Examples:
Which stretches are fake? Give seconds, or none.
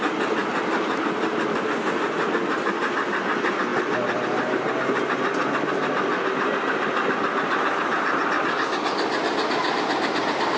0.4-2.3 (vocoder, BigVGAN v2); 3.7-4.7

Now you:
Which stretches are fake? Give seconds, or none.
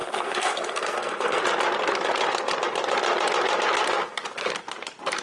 0.0-1.4 (codec, SNAC)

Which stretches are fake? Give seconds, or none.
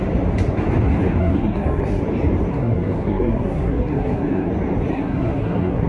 1.2-2.0 (codec, SNAC); 2.5-4.5; 4.9-5.9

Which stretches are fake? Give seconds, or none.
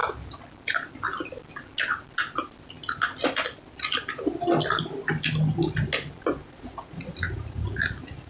6.4-8.3 (vocoder, Vocos)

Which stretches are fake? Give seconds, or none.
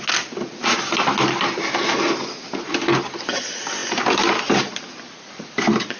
none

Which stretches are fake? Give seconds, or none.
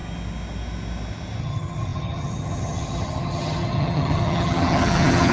1.4-5.3 (vocoder, HiFi-GAN)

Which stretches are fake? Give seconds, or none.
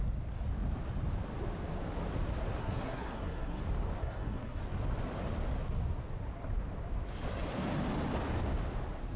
2.6-3.6 (codec, SNAC); 4.0-4.6